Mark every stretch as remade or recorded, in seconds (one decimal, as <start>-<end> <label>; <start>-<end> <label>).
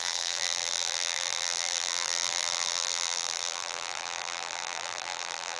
0.0-5.6 remade